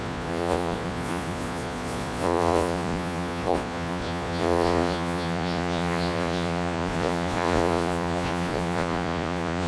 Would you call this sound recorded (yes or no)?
no